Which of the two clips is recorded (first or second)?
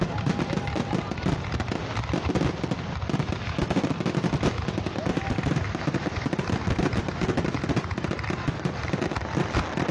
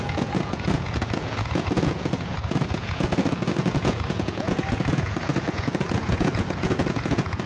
first